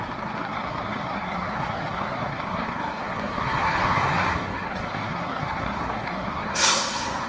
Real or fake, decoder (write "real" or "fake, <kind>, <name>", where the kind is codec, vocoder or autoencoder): fake, codec, SNAC